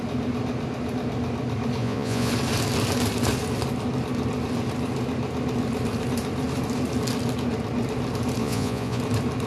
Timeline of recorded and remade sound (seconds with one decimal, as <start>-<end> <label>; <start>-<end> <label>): 0.0-1.8 recorded; 1.8-2.3 remade; 2.3-8.4 recorded; 8.4-9.0 remade; 9.0-9.5 recorded